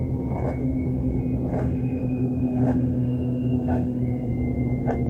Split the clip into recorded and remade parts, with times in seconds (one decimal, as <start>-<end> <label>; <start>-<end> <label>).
0.0-0.6 recorded; 0.6-1.2 remade; 1.2-1.6 recorded; 1.6-4.3 remade; 4.3-5.1 recorded